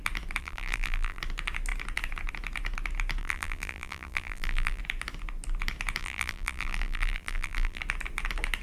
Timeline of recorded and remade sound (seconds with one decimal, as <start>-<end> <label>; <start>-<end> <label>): 0.0-0.4 recorded; 0.4-1.2 remade; 1.2-3.2 recorded; 3.2-4.8 remade; 4.8-6.0 recorded; 6.0-7.8 remade; 7.8-8.6 recorded